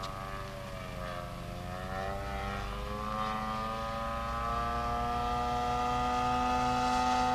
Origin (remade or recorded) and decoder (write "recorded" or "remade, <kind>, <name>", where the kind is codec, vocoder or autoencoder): recorded